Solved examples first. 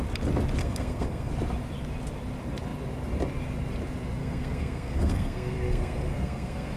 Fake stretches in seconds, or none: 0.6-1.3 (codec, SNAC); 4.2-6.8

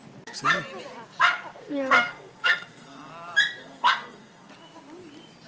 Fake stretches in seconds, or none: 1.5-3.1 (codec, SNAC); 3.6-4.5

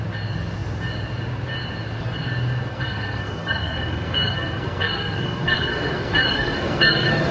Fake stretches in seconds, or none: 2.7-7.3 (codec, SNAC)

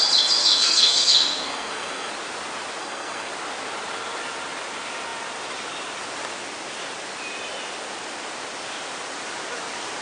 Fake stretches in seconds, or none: 0.4-2.1 (codec, SNAC); 2.8-3.3

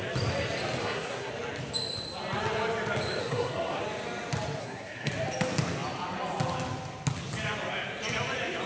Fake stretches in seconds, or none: 0.8-1.3 (codec, SNAC); 3.2-3.8; 4.6-5.1